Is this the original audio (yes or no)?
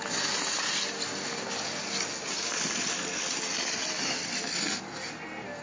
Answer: yes